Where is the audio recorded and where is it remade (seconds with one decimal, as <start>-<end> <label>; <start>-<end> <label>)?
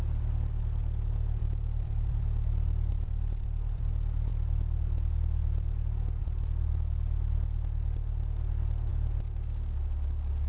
0.0-1.4 recorded; 1.4-2.2 remade; 2.2-2.9 recorded; 2.9-3.9 remade; 3.9-10.5 recorded